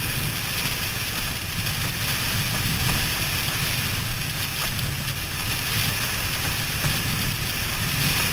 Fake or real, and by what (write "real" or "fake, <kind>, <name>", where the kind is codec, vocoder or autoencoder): real